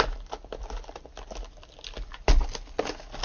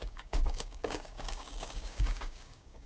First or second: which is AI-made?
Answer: second